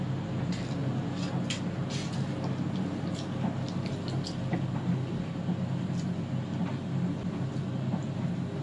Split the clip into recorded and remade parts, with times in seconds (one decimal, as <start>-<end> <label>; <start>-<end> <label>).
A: 0.0-8.6 recorded